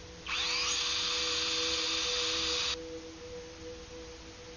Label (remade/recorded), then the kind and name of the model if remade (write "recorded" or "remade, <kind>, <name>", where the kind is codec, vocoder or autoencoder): recorded